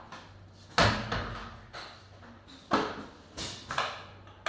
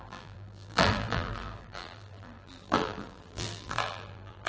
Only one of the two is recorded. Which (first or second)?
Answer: first